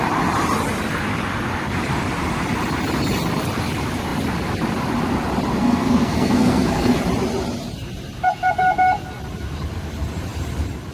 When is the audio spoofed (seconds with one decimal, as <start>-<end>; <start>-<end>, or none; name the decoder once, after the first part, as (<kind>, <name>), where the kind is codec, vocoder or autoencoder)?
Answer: 5.6-7.0 (codec, SNAC)